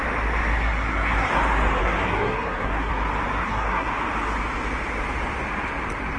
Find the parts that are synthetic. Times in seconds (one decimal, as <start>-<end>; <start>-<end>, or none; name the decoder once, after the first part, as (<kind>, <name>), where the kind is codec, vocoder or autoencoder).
0.5-1.3 (codec, SNAC); 1.8-2.9; 3.4-3.9